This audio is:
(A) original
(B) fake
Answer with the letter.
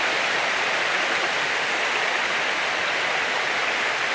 B